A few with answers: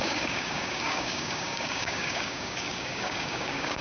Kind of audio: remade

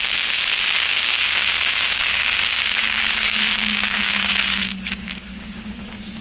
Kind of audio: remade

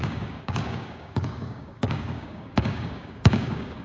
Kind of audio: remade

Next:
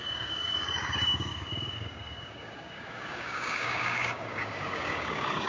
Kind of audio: remade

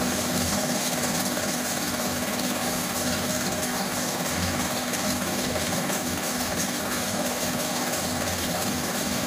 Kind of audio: remade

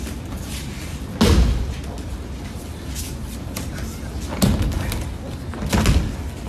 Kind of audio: recorded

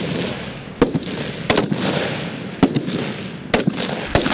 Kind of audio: recorded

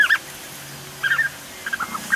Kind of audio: recorded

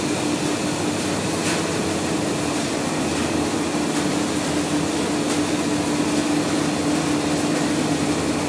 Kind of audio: recorded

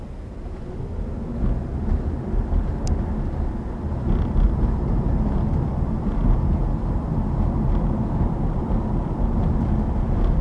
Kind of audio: recorded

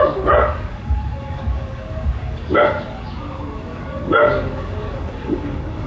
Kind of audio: remade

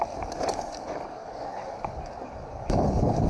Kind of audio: remade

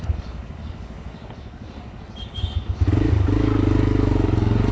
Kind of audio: remade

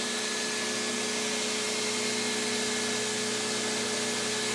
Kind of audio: recorded